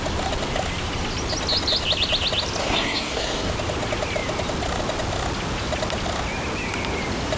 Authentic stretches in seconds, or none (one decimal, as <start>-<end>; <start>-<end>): 0.0-2.6; 3.5-7.4

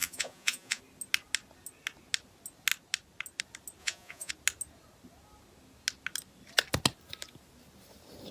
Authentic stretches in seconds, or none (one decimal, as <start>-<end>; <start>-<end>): 0.8-3.8; 4.3-8.3

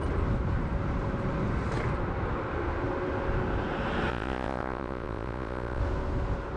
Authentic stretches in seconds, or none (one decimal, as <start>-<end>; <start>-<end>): 0.0-4.1; 5.8-6.6

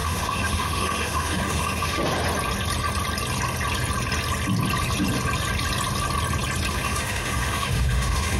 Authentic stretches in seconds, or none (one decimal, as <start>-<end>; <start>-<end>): 2.0-6.7

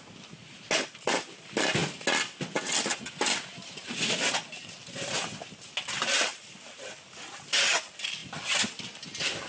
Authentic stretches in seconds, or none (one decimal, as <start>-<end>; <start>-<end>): 0.0-3.8; 4.3-6.3; 6.9-8.2; 8.8-9.5

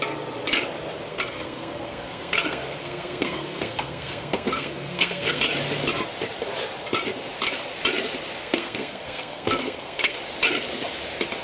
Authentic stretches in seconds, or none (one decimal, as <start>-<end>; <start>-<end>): 0.0-1.1; 5.4-8.4; 10.2-11.4

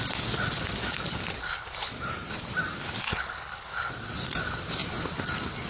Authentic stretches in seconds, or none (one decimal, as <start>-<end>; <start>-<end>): 0.0-1.4; 1.9-3.0; 3.9-5.7